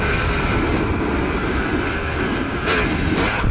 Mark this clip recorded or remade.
recorded